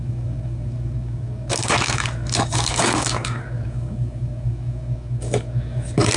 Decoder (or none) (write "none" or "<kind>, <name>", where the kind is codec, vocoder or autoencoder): codec, DAC